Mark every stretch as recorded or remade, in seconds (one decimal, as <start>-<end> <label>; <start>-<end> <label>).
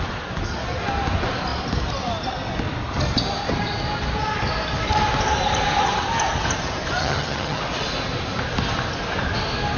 0.0-7.0 recorded; 7.0-7.6 remade; 7.6-9.8 recorded